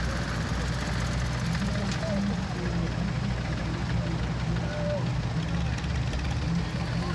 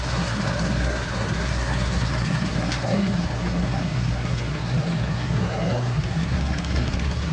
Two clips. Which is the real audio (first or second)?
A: first